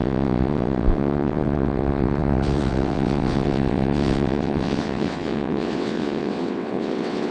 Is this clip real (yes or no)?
no